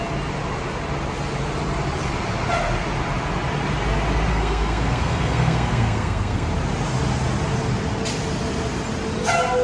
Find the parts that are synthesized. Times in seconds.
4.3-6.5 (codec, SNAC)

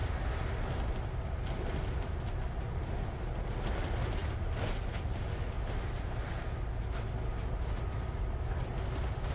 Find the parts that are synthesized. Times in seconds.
none

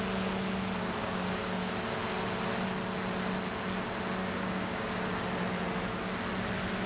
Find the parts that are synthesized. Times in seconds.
1.0-1.7 (codec, DAC); 4.2-5.0

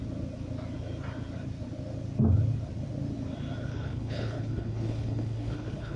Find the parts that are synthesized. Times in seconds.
3.7-6.0 (codec, HILCodec)

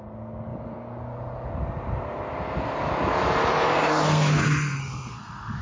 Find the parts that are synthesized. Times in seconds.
3.7-5.6 (codec, SNAC)

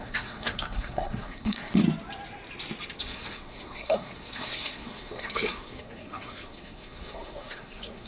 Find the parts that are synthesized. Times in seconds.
0.0-1.8 (codec, SNAC); 3.0-8.1

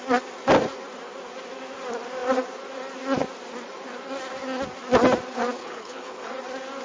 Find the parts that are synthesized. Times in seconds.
5.6-6.3 (codec, HILCodec)

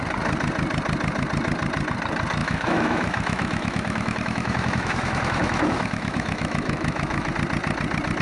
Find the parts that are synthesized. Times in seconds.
2.4-7.3 (autoencoder, DAC-VAE)